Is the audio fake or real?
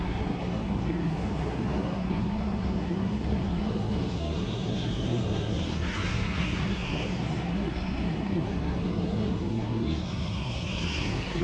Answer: fake